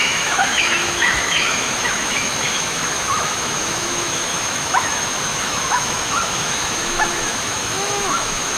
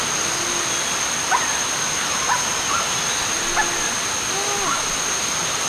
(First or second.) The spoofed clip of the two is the first